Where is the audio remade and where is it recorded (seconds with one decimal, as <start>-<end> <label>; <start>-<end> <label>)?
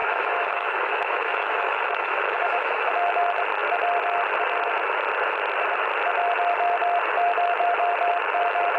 0.0-2.9 remade; 2.9-8.8 recorded